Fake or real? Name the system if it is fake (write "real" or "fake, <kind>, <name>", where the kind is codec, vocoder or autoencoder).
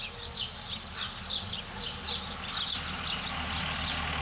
real